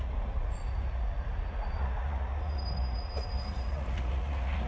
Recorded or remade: remade